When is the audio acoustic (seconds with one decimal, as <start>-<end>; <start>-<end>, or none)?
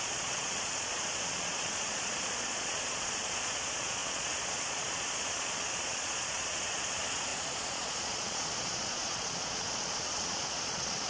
none